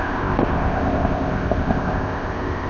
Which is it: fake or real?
fake